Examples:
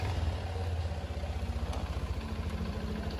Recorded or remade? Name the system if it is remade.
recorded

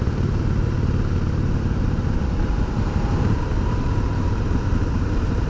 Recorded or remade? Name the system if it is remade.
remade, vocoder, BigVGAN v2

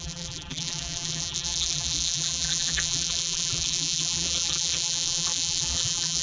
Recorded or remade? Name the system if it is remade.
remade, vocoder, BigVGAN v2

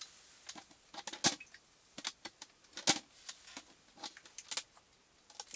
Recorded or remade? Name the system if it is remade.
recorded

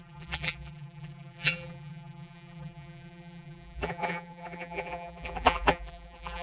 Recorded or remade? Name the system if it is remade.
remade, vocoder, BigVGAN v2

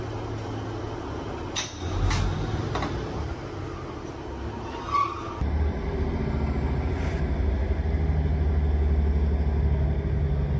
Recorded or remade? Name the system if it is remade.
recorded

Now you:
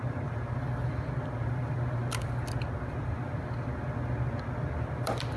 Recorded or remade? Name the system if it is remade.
remade, vocoder, BigVGAN v2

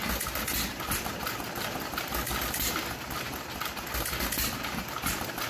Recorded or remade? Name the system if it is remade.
recorded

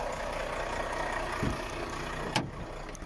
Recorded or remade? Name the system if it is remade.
recorded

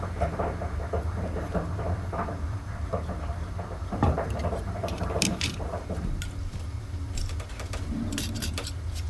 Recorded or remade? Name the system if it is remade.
remade, vocoder, BigVGAN v2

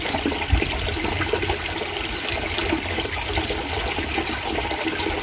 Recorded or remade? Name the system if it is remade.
recorded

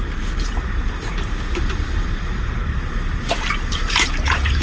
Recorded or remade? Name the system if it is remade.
remade, vocoder, BigVGAN v2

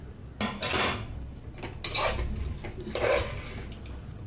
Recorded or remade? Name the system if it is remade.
recorded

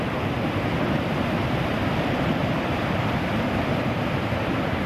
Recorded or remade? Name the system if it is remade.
remade, vocoder, BigVGAN v2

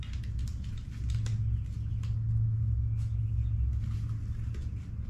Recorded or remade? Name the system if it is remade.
recorded